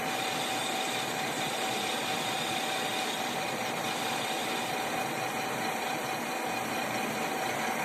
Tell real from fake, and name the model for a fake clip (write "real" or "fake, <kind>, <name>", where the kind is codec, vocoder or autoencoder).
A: real